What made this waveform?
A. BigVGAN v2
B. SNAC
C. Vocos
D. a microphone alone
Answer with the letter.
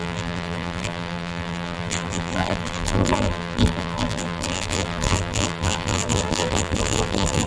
A